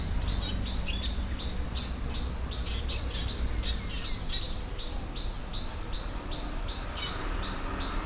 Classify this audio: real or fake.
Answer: real